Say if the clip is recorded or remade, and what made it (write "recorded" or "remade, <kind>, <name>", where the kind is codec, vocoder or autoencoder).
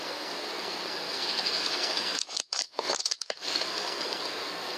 remade, codec, SNAC